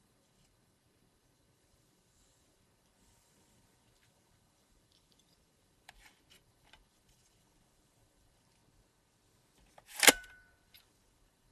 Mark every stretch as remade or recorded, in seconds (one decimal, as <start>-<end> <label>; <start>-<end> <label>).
0.0-8.6 remade; 8.6-10.1 recorded; 10.1-11.5 remade